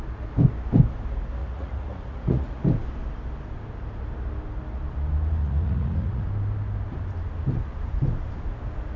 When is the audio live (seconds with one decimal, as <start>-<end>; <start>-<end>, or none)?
0.0-1.4; 2.6-5.4; 6.3-9.0

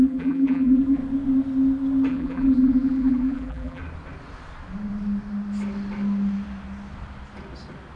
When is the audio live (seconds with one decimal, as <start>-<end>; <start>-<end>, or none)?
1.0-2.1; 3.8-8.0

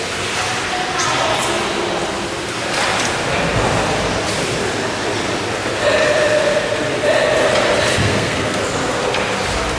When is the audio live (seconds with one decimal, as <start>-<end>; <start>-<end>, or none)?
0.0-8.0; 8.6-9.8

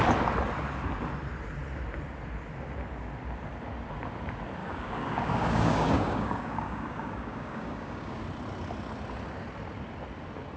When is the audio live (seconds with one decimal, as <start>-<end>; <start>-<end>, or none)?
0.0-4.6; 8.2-10.6